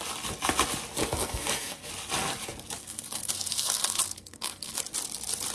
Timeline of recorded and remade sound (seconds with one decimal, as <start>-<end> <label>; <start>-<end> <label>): 0.0-1.0 recorded; 1.0-1.9 remade; 1.9-2.8 recorded; 2.8-4.8 remade; 4.8-5.5 recorded